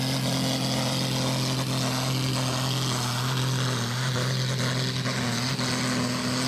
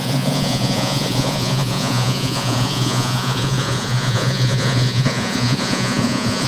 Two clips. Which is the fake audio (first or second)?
second